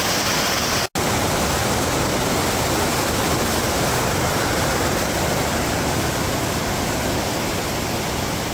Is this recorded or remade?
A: recorded